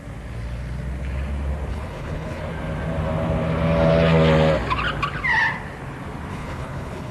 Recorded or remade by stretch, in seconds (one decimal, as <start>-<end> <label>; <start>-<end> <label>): 0.0-1.7 recorded; 1.7-2.4 remade; 2.4-6.3 recorded; 6.3-7.1 remade